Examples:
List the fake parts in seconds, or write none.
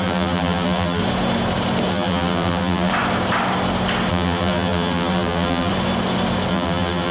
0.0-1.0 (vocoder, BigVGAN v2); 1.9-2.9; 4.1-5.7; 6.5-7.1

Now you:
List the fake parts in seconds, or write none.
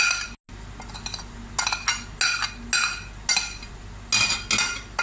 none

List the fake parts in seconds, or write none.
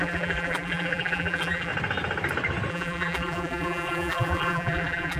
0.0-1.7 (vocoder, BigVGAN v2); 2.7-5.2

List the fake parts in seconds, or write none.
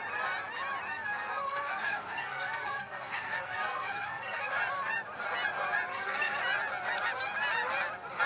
0.9-4.5 (codec, SNAC); 5.9-6.4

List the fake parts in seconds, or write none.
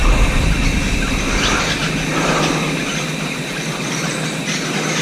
0.0-1.8 (vocoder, BigVGAN v2)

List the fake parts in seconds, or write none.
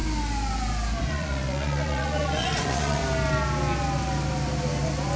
1.1-3.0 (vocoder, Vocos)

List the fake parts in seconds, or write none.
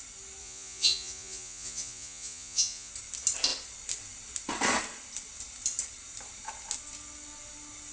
0.4-2.9 (vocoder, Vocos)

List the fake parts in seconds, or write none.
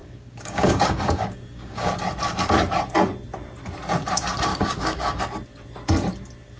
0.0-1.9 (codec, DAC); 4.5-5.2